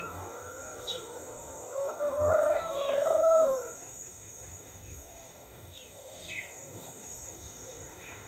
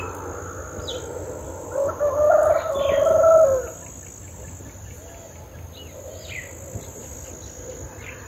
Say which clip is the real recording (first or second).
second